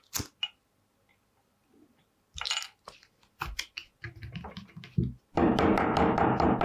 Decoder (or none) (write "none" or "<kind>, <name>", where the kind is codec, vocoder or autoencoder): none